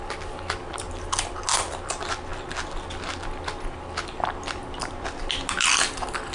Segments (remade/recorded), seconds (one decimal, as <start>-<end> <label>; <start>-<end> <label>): 0.0-6.3 recorded